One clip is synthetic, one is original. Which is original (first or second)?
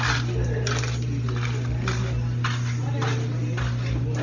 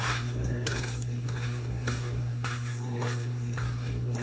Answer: first